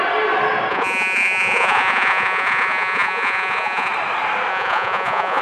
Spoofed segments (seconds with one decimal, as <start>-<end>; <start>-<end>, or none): 0.7-3.9; 4.5-5.4